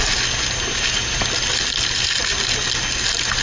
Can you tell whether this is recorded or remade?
recorded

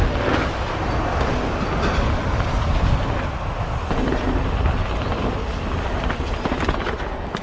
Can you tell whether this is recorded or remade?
recorded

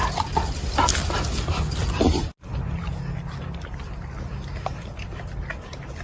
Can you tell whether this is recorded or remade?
recorded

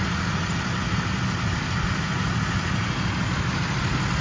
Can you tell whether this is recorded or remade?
recorded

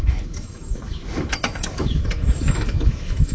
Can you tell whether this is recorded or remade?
remade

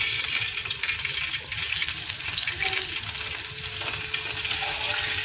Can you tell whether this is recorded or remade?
recorded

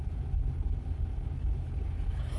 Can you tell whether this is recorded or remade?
recorded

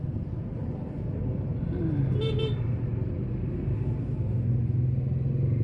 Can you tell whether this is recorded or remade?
recorded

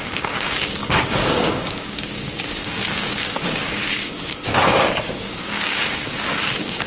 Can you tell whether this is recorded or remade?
remade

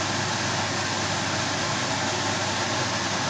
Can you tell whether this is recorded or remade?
recorded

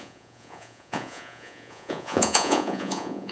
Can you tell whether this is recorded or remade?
remade